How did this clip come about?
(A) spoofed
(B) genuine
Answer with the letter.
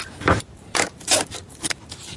A